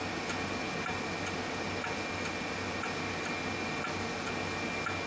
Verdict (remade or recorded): recorded